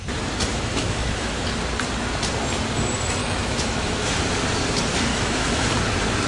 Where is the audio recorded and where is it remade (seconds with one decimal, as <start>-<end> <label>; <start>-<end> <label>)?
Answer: 0.0-0.5 recorded; 0.5-1.4 remade; 1.4-3.2 recorded; 3.2-4.2 remade; 4.2-5.1 recorded; 5.1-5.7 remade; 5.7-6.3 recorded